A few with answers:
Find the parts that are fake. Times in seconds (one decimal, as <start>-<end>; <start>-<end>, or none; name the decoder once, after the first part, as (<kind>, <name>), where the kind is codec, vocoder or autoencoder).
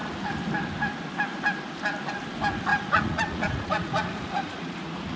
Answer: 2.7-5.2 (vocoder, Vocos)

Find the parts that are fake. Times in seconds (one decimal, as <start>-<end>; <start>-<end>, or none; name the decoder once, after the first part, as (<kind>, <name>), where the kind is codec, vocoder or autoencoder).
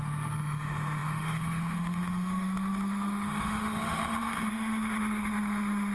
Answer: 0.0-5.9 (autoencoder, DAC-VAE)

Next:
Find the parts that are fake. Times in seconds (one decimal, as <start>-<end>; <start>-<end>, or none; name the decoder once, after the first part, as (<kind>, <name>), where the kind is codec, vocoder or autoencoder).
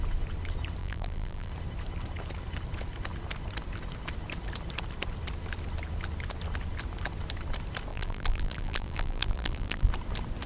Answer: 0.8-1.5 (vocoder, BigVGAN v2); 7.9-9.9